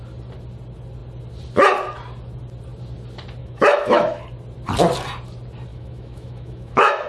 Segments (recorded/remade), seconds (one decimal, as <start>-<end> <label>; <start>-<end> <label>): 0.0-3.4 recorded; 3.4-4.2 remade; 4.2-5.7 recorded; 5.7-7.1 remade